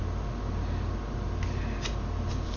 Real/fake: real